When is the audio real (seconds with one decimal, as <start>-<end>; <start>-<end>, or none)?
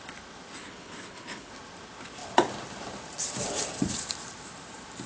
0.0-0.6; 1.5-5.1